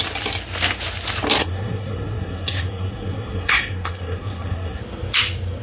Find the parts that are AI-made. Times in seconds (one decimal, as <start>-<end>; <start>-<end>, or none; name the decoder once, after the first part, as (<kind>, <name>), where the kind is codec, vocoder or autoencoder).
1.4-4.8 (codec, SNAC)